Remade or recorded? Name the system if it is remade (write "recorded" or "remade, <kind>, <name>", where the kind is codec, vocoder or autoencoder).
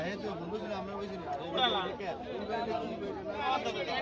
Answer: recorded